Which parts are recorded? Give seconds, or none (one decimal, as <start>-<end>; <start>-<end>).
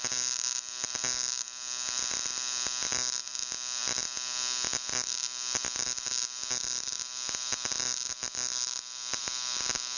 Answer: 3.3-3.8